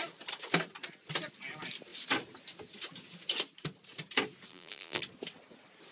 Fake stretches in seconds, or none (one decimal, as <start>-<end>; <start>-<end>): 4.5-5.0